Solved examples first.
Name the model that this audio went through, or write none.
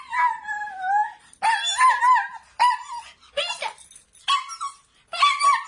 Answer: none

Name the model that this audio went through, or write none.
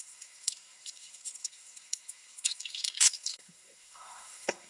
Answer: codec, SNAC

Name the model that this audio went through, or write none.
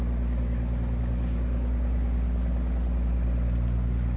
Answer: none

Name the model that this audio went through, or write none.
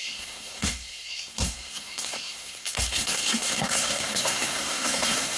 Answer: codec, SNAC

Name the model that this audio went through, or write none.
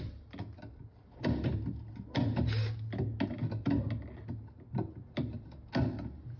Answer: none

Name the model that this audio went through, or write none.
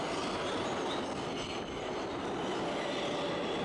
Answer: none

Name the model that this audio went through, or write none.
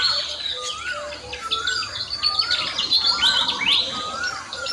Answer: none